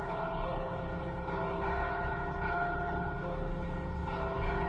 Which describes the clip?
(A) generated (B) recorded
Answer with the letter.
A